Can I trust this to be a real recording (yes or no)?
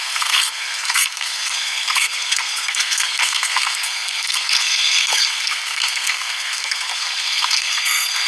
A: no